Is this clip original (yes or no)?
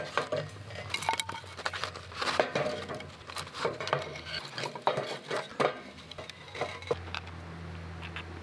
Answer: yes